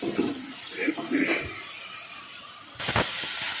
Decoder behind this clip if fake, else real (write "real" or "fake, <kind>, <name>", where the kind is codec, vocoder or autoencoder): real